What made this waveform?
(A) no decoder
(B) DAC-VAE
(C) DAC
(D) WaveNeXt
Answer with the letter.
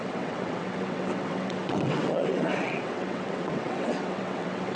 D